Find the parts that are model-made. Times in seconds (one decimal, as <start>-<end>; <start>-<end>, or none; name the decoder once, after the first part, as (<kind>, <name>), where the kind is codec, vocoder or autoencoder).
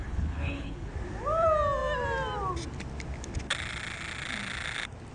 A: 0.0-0.9 (codec, HILCodec)